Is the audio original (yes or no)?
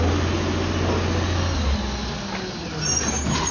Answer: yes